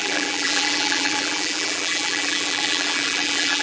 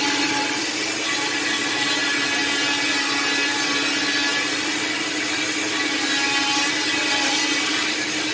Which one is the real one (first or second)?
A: second